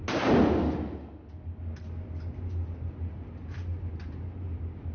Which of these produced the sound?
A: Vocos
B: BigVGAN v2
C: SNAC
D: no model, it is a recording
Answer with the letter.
D